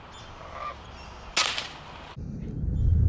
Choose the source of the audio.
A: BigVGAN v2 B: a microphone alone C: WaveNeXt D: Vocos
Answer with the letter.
B